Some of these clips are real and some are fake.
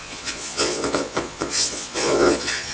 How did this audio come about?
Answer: fake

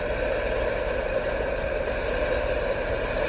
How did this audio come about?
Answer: real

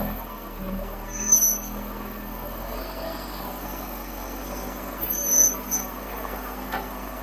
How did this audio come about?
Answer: fake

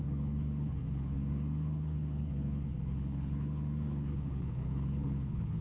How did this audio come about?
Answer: fake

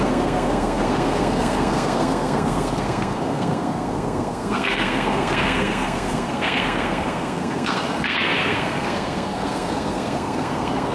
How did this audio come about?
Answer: fake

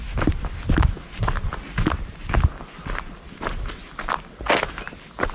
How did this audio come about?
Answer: real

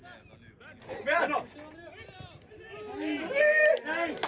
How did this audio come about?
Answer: real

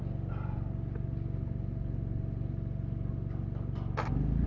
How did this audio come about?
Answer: real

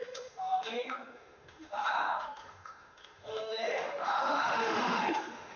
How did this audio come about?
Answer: fake